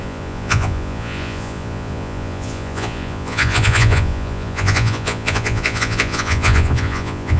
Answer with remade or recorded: remade